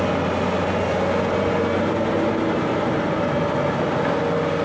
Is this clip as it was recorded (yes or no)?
yes